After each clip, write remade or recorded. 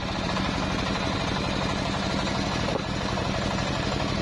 recorded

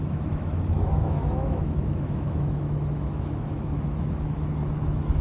remade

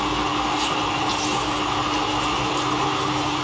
recorded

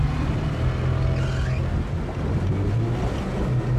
recorded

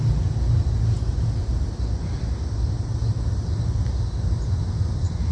recorded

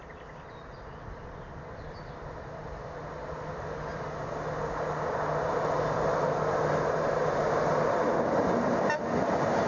recorded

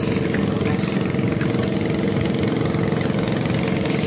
recorded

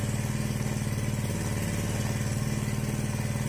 recorded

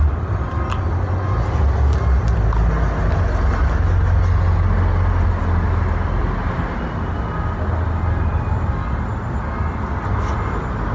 recorded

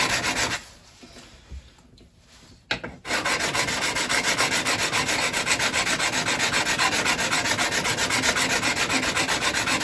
recorded